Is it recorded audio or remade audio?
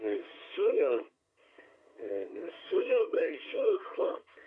remade